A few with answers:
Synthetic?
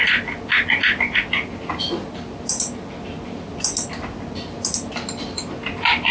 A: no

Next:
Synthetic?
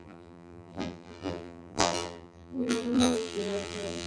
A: yes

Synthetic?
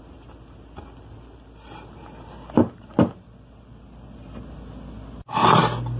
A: no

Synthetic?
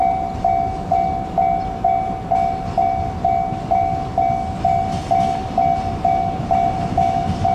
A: no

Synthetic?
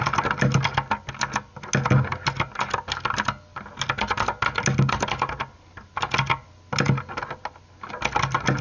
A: no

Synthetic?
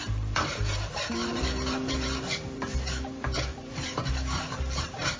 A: yes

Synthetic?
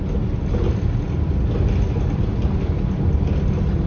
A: no